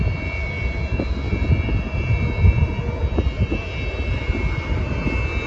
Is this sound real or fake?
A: real